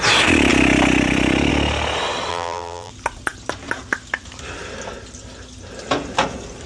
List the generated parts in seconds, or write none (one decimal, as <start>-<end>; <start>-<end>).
2.3-2.9